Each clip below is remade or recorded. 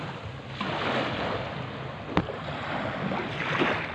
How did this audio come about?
recorded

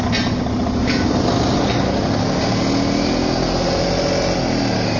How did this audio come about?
recorded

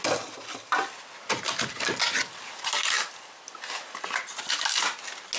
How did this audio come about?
recorded